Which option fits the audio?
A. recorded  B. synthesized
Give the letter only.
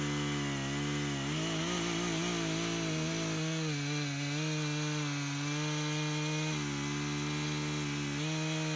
A